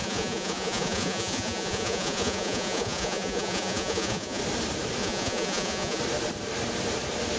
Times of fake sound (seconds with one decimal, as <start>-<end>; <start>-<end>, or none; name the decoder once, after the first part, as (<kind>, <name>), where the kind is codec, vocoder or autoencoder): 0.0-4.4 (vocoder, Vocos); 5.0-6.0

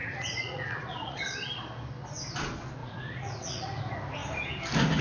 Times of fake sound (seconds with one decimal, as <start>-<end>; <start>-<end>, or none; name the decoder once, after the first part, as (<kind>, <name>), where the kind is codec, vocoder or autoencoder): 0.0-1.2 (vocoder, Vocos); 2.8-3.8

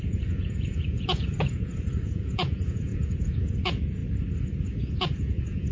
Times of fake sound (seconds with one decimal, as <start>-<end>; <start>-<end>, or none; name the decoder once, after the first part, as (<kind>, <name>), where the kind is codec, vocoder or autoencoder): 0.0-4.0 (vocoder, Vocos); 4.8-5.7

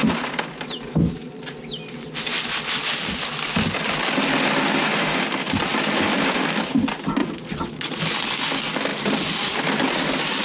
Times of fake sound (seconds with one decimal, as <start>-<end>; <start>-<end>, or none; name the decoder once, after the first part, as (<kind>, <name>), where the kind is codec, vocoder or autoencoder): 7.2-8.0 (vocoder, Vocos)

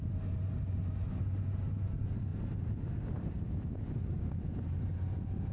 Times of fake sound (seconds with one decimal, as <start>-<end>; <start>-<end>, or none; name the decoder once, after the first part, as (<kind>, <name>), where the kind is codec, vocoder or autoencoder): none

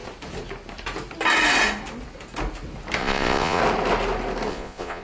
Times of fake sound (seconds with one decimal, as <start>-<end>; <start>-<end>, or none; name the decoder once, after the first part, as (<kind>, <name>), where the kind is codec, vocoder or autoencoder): 3.0-3.6 (vocoder, Vocos); 4.5-5.0

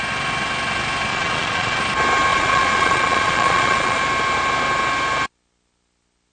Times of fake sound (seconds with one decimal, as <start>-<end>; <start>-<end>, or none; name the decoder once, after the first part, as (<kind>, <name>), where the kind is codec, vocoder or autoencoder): 1.1-1.8 (vocoder, Vocos); 2.3-4.0

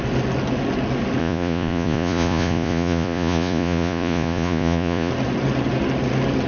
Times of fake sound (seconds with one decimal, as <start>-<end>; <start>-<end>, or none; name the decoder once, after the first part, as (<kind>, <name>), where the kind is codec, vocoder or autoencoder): 1.2-5.1 (vocoder, Vocos)